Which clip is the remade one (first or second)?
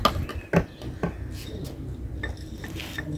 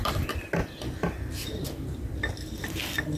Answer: second